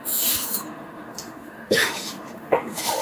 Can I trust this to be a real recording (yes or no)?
no